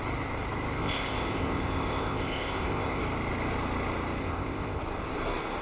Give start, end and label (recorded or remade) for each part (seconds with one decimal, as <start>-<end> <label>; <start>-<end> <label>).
0.0-0.8 recorded; 0.8-3.0 remade; 3.0-4.2 recorded; 4.2-4.8 remade; 4.8-5.6 recorded